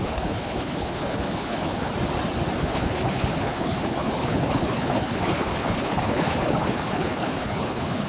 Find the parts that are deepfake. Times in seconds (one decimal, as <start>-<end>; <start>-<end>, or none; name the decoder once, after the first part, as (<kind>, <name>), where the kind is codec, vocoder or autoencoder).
0.0-1.9 (codec, HILCodec); 2.6-8.1

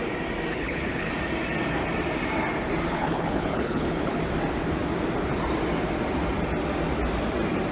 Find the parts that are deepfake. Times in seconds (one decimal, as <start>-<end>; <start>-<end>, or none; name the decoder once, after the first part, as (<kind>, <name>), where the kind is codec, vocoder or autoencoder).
0.5-1.1 (codec, HILCodec); 2.9-4.2